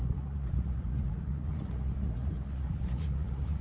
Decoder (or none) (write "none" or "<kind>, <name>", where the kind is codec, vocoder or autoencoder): vocoder, Vocos